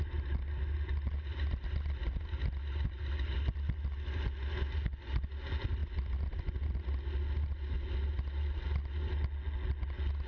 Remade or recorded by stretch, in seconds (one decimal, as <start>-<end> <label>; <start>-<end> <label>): 0.0-10.3 recorded

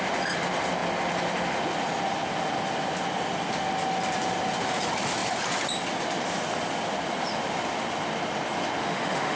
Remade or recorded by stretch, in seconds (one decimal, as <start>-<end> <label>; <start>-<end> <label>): 0.0-8.8 recorded; 8.8-9.4 remade

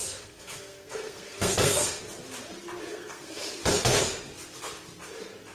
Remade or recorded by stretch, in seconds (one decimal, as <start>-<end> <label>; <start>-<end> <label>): 0.0-2.0 remade; 2.0-2.9 recorded; 2.9-3.6 remade; 3.6-5.5 recorded